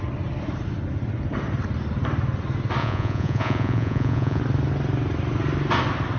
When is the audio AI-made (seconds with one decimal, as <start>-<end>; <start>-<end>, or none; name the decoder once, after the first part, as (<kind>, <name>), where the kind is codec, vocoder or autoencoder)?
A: 2.8-4.4 (vocoder, Vocos)